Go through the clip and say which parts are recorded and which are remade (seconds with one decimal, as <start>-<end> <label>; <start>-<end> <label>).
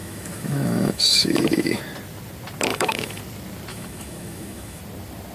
0.0-1.8 remade; 1.8-2.7 recorded; 2.7-3.2 remade; 3.2-3.7 recorded; 3.7-4.8 remade; 4.8-5.3 recorded